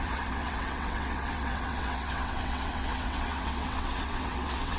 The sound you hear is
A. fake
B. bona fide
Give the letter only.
A